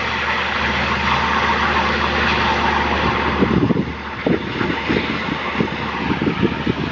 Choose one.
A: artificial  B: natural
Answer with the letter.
B